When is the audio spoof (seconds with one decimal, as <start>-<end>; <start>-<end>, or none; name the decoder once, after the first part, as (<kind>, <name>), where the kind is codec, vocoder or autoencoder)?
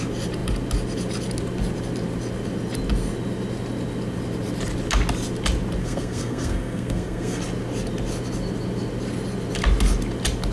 5.8-7.4 (codec, SNAC)